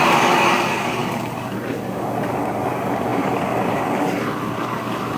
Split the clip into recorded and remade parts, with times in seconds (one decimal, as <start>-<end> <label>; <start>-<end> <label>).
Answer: 0.0-5.2 remade